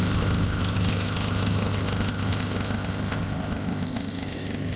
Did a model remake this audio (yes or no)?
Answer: yes